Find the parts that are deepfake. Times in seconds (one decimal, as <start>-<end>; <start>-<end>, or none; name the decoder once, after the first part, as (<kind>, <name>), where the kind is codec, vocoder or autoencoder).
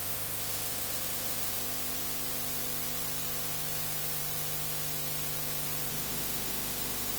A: 0.0-1.6 (autoencoder, DAC-VAE); 5.9-7.2